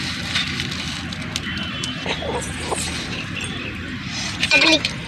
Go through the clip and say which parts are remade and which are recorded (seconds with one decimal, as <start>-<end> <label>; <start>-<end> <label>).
0.0-0.4 remade; 0.4-1.4 recorded; 1.4-5.1 remade